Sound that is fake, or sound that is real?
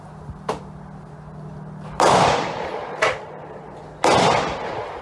real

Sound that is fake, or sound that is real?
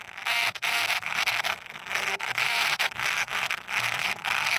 fake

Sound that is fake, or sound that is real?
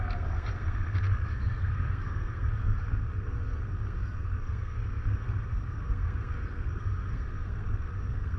fake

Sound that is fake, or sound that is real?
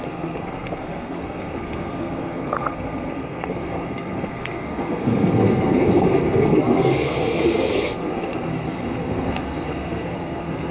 fake